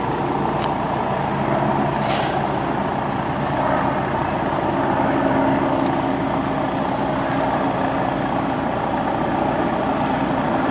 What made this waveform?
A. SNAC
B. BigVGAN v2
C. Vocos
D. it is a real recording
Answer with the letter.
D